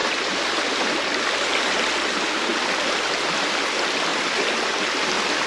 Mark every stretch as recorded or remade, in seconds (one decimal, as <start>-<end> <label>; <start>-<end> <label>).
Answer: 0.0-1.3 remade; 1.3-4.1 recorded; 4.1-4.8 remade; 4.8-5.5 recorded